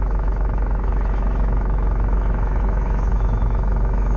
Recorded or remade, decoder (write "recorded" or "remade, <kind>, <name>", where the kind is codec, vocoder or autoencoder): remade, autoencoder, DAC-VAE